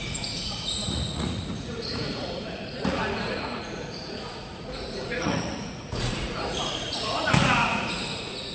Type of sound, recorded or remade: remade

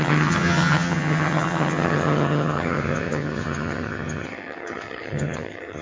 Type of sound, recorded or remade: remade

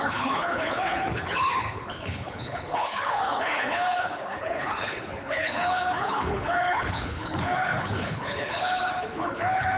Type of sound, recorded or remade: remade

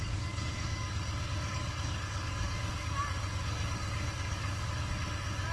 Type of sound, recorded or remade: remade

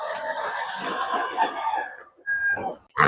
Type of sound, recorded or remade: recorded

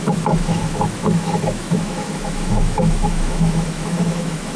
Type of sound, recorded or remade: remade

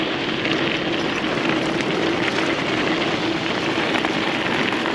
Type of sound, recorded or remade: recorded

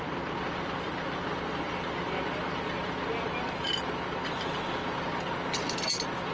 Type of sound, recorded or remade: recorded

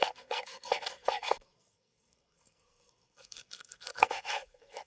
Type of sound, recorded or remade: remade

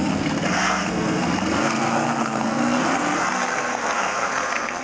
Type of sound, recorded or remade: remade